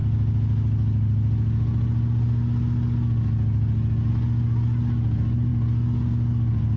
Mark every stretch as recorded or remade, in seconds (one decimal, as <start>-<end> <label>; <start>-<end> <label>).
0.0-6.8 recorded